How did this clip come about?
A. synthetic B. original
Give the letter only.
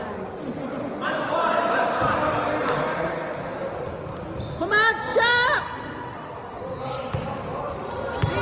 B